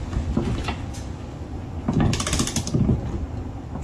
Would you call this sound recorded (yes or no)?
yes